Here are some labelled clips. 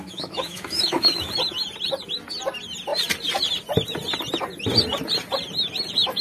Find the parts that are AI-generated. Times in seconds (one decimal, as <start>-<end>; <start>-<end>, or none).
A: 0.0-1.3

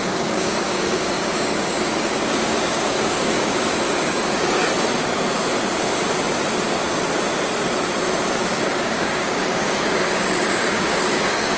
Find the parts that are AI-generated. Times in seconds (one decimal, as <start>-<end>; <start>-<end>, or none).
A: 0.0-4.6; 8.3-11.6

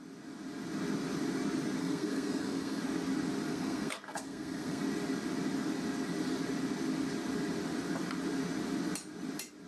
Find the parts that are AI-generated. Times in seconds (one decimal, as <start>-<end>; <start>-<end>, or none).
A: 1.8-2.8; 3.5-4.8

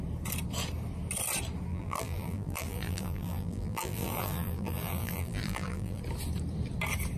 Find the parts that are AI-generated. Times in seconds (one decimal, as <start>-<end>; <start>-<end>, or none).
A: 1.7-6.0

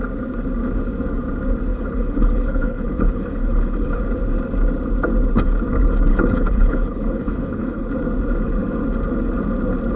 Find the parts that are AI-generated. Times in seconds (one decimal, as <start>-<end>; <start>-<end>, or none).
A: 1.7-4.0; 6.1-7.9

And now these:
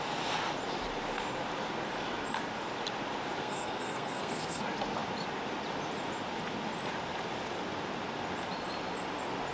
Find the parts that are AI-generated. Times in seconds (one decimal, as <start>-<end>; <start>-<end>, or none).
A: 3.4-4.6